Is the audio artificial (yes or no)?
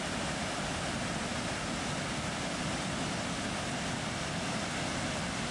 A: no